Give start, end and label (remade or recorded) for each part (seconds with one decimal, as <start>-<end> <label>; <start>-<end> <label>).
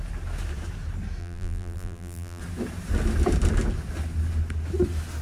0.0-1.2 recorded; 1.2-2.4 remade; 2.4-5.2 recorded